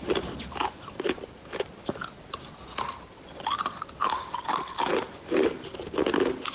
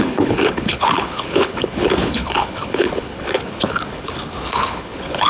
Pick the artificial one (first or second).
second